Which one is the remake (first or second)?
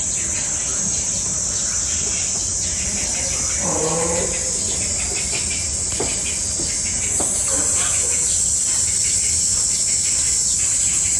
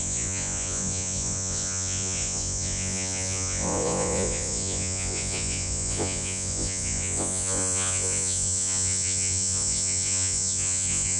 second